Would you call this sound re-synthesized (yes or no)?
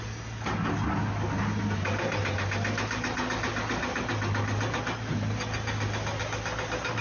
no